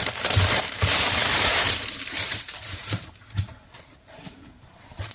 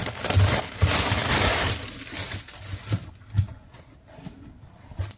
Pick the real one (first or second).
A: second